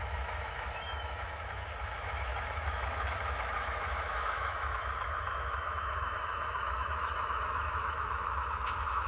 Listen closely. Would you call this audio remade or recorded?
remade